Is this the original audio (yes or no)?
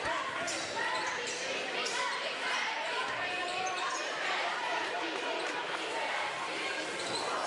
no